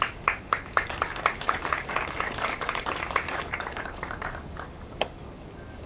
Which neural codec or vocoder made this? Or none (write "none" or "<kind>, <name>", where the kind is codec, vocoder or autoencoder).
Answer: codec, DAC